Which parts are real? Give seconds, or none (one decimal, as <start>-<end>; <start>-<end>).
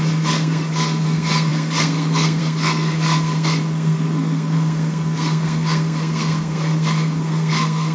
none